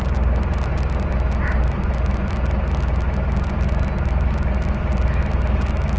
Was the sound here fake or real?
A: real